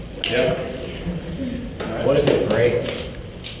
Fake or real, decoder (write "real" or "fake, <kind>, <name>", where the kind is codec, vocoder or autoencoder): real